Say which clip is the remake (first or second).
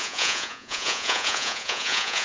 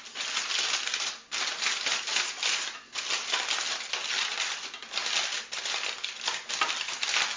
first